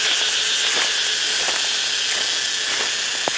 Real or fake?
real